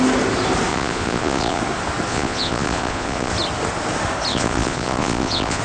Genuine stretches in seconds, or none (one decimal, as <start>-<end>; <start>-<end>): 0.0-0.7; 1.6-2.1; 3.3-4.3